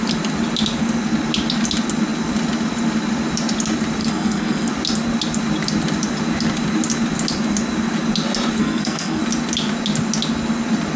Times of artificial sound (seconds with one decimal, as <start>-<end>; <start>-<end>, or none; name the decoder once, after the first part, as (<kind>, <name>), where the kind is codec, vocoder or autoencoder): 4.0-4.7 (codec, SNAC); 8.6-9.2